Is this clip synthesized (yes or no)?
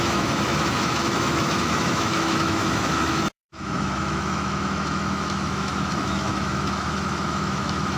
yes